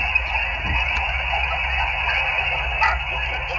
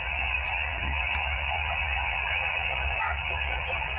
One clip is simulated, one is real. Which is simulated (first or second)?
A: second